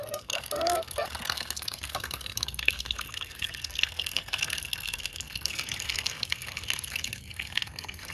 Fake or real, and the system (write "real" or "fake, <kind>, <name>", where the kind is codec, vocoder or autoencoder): fake, codec, SNAC